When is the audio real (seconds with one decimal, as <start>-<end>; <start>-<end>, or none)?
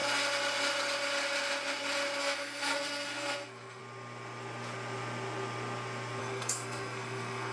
0.0-2.2; 3.8-6.2